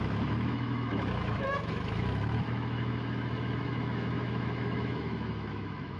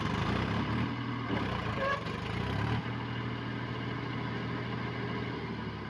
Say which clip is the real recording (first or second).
second